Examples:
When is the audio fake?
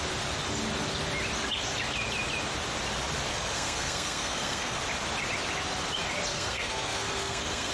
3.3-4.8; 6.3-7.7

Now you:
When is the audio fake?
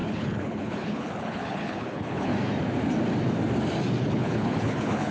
0.0-2.3; 4.1-5.1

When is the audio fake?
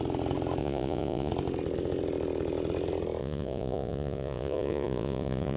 0.6-1.3; 3.2-5.6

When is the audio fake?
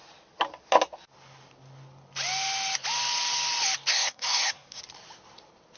3.9-4.8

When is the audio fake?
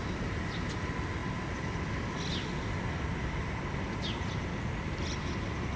none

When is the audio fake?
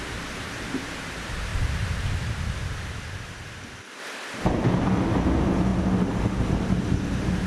none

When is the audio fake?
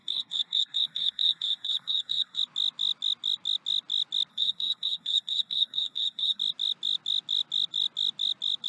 0.0-2.4; 4.3-6.4